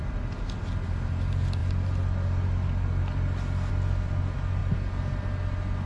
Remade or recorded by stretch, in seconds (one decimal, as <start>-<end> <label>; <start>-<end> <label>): 0.0-5.9 recorded